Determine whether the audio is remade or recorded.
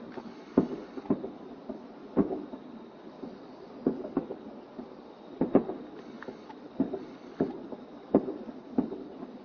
recorded